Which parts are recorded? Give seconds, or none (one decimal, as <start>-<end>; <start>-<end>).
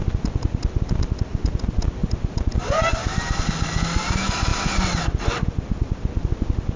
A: 0.0-2.0; 3.4-6.8